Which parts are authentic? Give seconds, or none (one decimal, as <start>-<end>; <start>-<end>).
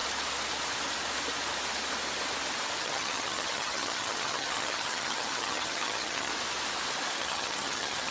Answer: 0.0-2.8; 6.3-7.2